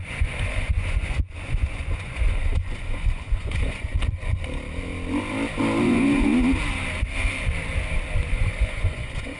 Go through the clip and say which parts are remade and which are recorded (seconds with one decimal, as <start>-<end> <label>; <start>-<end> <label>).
0.0-3.9 remade; 3.9-5.8 recorded; 5.8-6.3 remade; 6.3-8.3 recorded; 8.3-9.4 remade

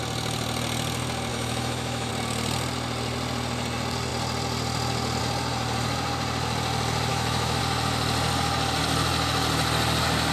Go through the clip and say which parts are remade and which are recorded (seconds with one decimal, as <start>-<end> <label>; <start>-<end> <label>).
0.0-1.3 recorded; 1.3-2.1 remade; 2.1-7.1 recorded; 7.1-7.6 remade; 7.6-10.3 recorded